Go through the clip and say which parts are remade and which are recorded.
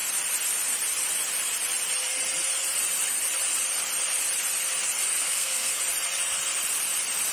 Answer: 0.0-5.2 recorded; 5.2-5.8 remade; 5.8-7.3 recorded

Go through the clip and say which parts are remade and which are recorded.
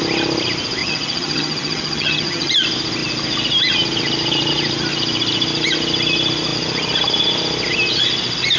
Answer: 0.0-0.8 recorded; 0.8-2.5 remade; 2.5-8.6 recorded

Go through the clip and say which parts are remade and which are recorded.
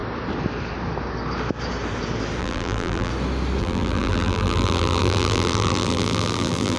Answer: 0.0-2.4 recorded; 2.4-3.1 remade; 3.1-3.6 recorded; 3.6-6.8 remade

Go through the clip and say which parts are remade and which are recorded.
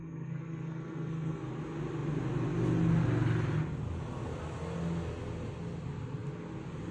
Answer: 0.0-1.4 remade; 1.4-6.9 recorded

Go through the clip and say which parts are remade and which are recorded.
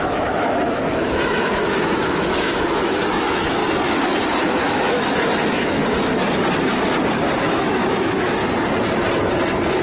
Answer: 0.0-3.6 remade; 3.6-4.5 recorded; 4.5-5.8 remade; 5.8-7.4 recorded; 7.4-8.4 remade; 8.4-9.8 recorded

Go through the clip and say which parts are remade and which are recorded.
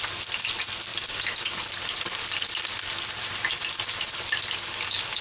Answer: 0.0-5.2 recorded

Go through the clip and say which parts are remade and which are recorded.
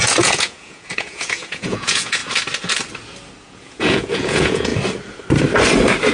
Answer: 0.0-2.2 remade; 2.2-3.4 recorded; 3.4-4.7 remade; 4.7-6.1 recorded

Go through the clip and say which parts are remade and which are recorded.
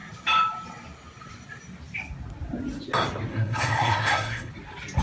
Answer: 0.0-3.3 recorded; 3.3-4.5 remade; 4.5-5.0 recorded